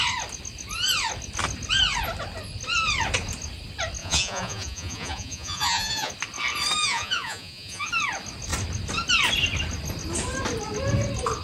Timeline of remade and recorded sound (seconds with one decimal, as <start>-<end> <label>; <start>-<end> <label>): 0.0-4.0 recorded; 4.0-6.1 remade; 6.1-6.8 recorded; 6.8-7.9 remade; 7.9-11.4 recorded